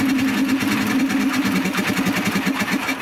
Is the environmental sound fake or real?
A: real